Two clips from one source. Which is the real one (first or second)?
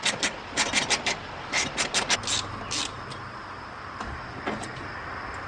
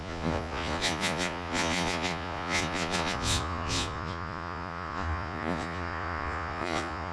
first